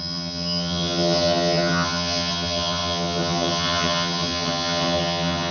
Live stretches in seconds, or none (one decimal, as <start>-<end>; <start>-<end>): none